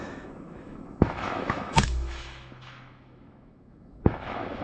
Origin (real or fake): fake